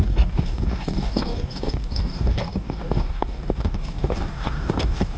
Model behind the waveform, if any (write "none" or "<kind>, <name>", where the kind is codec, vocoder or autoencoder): codec, DAC